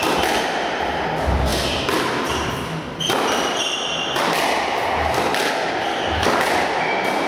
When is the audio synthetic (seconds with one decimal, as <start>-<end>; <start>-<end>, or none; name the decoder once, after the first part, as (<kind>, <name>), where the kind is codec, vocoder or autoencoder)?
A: 5.9-6.5 (codec, DAC)